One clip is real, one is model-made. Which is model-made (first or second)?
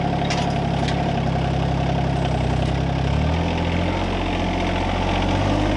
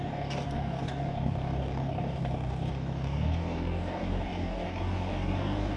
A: second